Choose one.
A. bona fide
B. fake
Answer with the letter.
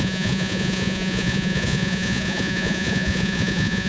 B